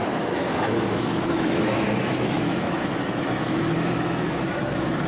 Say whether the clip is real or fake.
fake